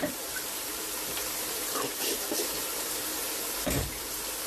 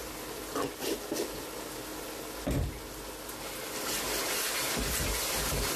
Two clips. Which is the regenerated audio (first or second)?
first